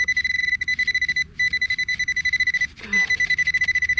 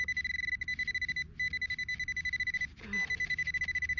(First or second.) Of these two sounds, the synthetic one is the first